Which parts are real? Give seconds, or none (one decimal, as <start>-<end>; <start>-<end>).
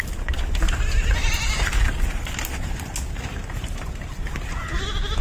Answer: 0.0-5.2